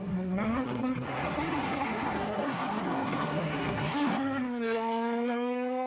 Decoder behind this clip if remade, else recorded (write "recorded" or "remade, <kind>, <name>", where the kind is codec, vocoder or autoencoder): remade, codec, SNAC